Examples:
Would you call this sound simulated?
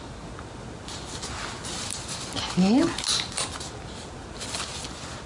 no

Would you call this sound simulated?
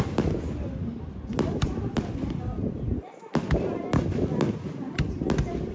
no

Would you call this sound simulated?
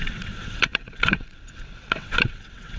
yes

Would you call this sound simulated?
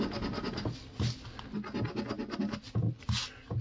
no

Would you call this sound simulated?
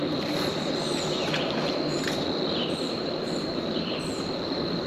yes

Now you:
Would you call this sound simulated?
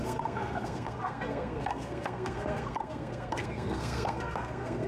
yes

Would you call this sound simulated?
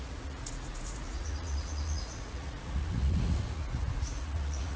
yes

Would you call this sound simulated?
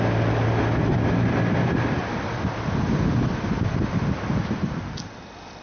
no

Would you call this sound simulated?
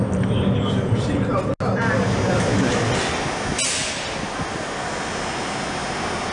no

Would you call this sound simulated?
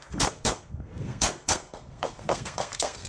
yes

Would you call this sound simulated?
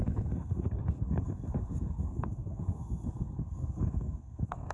yes